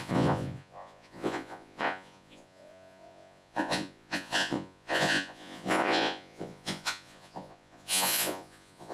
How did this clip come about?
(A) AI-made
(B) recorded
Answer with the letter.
A